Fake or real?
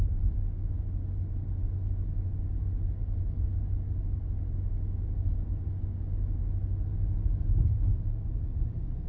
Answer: real